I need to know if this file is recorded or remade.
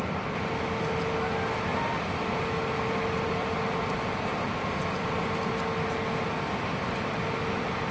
recorded